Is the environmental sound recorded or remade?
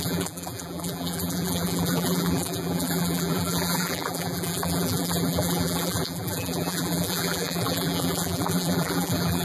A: remade